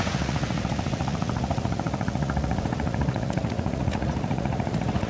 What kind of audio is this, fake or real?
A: fake